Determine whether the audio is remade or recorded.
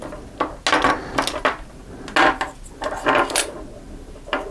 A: recorded